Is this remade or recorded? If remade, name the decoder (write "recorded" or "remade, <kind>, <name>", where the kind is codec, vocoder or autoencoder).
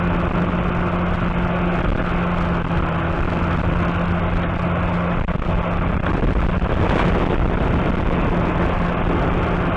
recorded